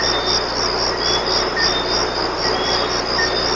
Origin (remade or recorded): recorded